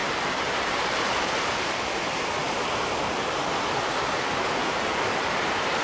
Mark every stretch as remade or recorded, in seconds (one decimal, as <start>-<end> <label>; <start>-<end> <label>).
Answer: 0.0-1.9 remade; 1.9-2.4 recorded; 2.4-3.4 remade; 3.4-4.6 recorded; 4.6-5.3 remade; 5.3-5.8 recorded